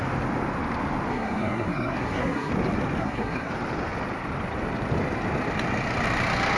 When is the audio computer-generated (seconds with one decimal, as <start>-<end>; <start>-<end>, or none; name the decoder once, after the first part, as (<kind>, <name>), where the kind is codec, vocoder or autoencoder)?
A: 1.1-2.5 (codec, SNAC); 3.0-3.5